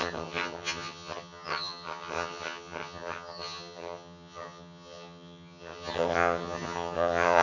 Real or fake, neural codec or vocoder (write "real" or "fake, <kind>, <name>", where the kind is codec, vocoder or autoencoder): fake, vocoder, HiFi-GAN